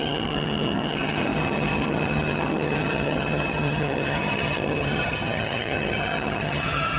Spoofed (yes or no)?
yes